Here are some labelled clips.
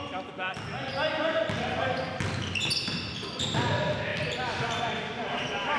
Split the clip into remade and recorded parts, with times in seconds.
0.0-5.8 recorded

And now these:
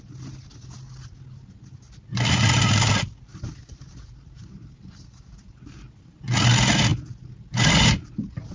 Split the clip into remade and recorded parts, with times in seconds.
0.0-3.3 recorded; 3.3-5.9 remade; 5.9-8.5 recorded

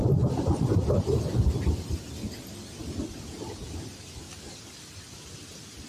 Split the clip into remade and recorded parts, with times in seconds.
0.0-0.5 remade; 0.5-5.9 recorded

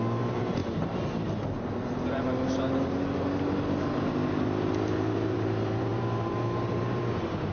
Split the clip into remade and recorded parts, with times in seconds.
0.0-0.6 remade; 0.6-5.1 recorded; 5.1-7.5 remade

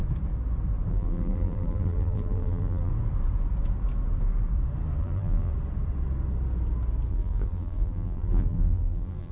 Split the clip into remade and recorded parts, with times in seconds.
0.0-0.9 recorded; 0.9-2.9 remade; 2.9-5.0 recorded; 5.0-5.5 remade; 5.5-7.1 recorded; 7.1-9.3 remade

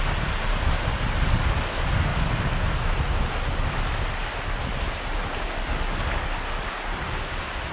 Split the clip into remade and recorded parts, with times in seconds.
0.0-7.7 recorded

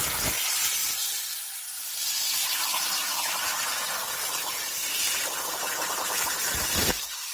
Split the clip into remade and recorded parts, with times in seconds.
0.0-0.8 recorded; 0.8-3.4 remade; 3.4-3.9 recorded; 3.9-7.3 remade